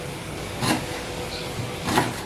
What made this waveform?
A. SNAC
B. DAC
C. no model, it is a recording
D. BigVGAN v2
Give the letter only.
B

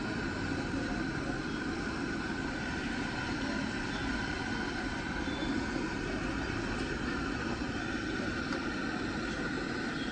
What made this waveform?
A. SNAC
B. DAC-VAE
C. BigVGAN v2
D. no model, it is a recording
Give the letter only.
D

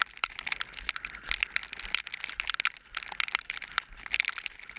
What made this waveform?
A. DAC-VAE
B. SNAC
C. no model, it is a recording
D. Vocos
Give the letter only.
C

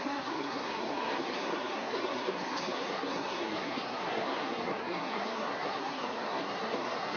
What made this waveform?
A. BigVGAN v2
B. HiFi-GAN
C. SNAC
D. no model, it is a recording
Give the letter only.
C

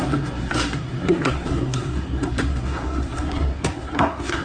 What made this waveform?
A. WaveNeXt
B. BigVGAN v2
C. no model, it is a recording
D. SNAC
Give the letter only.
D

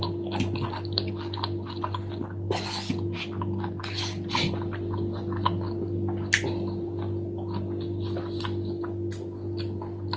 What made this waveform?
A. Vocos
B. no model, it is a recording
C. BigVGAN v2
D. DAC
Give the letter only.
B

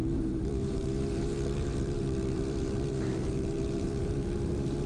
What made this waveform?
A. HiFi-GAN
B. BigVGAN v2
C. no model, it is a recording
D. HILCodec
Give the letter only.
B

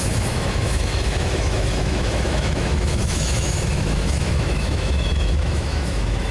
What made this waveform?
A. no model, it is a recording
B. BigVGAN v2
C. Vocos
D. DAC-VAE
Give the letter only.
D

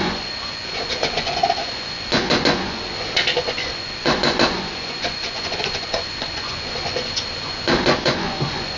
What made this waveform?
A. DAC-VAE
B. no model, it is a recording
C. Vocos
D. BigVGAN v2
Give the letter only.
C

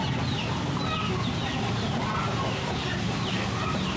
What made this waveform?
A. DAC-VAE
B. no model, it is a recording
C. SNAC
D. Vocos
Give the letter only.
B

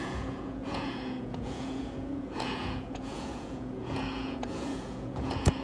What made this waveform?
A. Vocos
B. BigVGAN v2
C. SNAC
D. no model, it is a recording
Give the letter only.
A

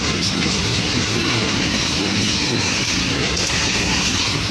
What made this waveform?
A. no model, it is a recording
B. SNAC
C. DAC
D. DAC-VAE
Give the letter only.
B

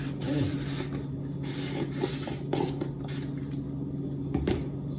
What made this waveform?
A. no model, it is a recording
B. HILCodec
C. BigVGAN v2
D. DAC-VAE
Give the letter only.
A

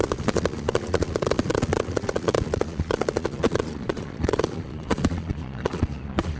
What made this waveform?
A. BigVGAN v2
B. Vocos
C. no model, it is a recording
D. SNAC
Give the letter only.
B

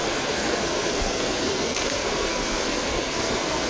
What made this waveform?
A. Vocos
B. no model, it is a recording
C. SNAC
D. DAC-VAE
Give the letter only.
C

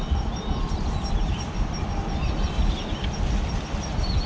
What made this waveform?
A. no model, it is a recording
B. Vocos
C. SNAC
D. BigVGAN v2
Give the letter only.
A